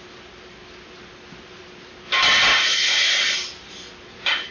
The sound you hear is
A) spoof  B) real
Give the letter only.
B